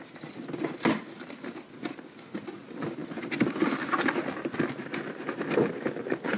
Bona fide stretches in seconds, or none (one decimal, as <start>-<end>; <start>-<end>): 0.0-6.4